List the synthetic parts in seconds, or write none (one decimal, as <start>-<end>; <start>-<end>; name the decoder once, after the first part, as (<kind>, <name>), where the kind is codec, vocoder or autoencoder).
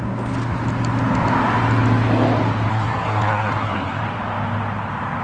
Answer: 2.7-4.0 (codec, SNAC)